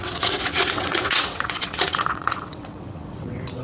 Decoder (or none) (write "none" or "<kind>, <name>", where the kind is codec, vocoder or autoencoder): vocoder, WaveNeXt